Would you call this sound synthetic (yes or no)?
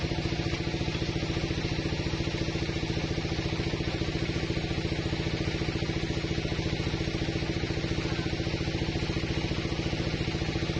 no